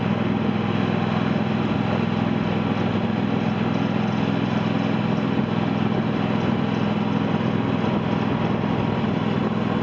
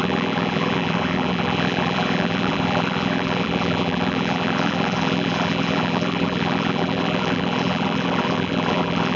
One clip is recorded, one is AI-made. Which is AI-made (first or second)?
second